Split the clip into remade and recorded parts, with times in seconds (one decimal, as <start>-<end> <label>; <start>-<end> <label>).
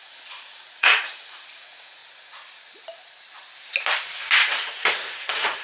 0.0-2.0 remade; 2.0-4.4 recorded; 4.4-5.6 remade